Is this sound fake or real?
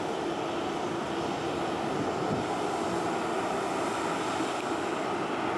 real